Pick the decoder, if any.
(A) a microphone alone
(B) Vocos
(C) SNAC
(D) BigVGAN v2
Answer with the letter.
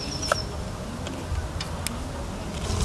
A